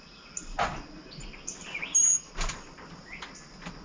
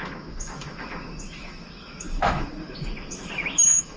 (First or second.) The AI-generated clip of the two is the second